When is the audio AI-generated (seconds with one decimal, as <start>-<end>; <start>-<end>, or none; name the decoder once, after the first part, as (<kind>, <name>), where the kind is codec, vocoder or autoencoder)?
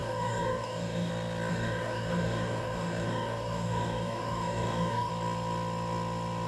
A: 0.0-1.1 (codec, DAC); 1.5-5.1